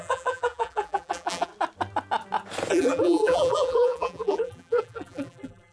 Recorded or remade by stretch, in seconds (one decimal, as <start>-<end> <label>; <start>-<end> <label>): 0.0-1.5 remade; 1.5-2.7 recorded; 2.7-5.7 remade